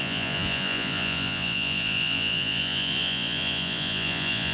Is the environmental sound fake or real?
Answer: fake